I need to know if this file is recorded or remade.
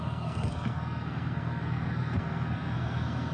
remade